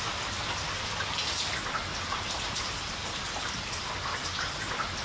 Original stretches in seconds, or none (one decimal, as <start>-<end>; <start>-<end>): 0.0-1.9; 2.6-3.0; 3.5-5.0

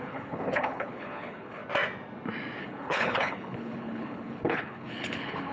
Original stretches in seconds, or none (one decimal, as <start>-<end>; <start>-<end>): 1.6-2.6

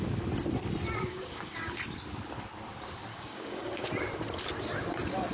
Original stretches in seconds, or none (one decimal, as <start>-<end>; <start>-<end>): 0.0-1.1; 1.8-3.1; 3.9-5.3

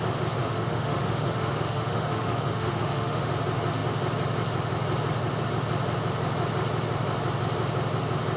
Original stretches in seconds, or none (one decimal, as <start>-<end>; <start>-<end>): 0.0-0.4; 3.3-8.4

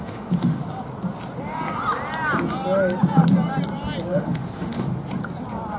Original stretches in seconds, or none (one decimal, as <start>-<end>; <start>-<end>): 0.6-4.1; 4.9-5.8

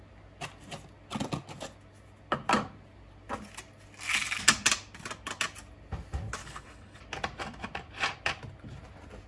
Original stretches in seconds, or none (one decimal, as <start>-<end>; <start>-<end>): 0.0-6.4; 7.0-9.3

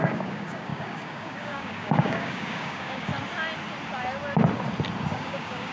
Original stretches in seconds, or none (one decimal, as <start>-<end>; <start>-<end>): 3.1-5.1